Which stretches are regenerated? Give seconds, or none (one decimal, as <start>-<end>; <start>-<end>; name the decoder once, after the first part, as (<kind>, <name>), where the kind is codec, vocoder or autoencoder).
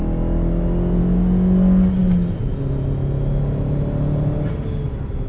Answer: none